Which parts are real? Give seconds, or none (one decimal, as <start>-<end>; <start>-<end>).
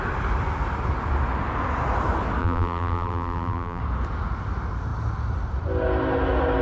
0.0-2.4; 3.8-6.6